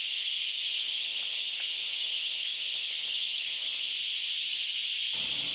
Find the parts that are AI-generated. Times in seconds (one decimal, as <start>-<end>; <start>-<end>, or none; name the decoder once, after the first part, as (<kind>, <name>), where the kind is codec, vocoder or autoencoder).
0.0-3.9 (codec, HILCodec)